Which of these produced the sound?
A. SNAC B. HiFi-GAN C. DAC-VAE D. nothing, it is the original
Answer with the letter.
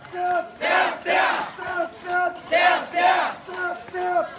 D